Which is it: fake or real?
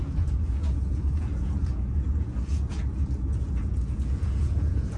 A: fake